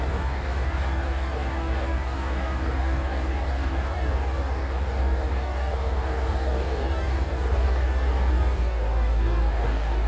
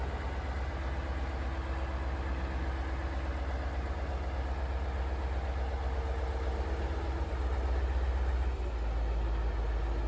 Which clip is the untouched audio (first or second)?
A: second